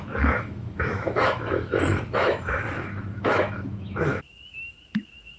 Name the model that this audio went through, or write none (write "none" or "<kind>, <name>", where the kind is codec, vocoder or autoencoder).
autoencoder, DAC-VAE